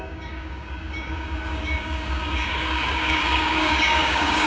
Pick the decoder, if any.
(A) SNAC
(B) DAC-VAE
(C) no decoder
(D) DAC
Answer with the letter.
D